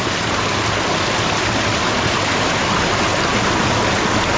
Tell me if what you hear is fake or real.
real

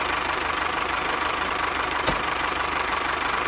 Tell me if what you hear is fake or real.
fake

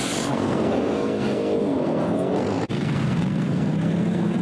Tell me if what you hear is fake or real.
fake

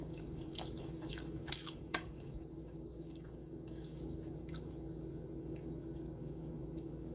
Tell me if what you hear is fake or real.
fake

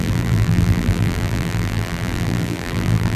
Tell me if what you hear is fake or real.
fake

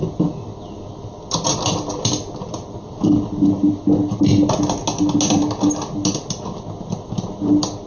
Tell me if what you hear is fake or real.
real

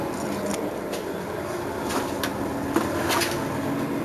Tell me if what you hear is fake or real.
real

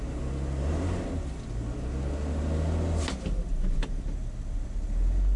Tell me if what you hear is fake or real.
real